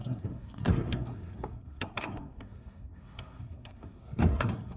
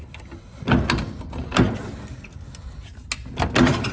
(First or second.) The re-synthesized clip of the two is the first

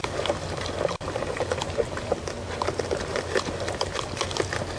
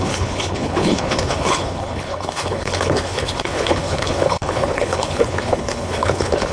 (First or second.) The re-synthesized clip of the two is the second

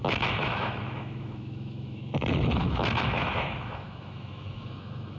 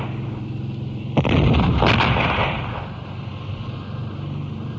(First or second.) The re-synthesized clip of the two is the first